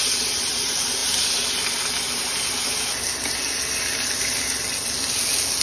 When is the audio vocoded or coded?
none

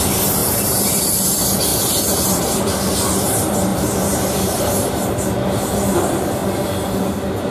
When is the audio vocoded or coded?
0.4-1.1 (vocoder, BigVGAN v2); 1.7-2.4; 3.7-4.6

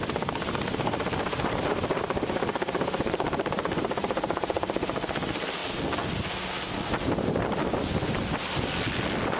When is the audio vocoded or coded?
none